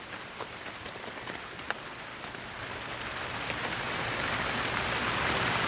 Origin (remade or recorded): remade